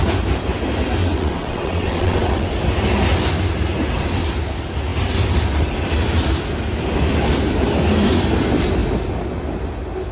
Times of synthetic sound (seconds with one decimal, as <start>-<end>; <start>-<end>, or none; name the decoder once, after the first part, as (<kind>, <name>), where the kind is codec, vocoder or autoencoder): 1.0-2.5 (vocoder, WaveNeXt)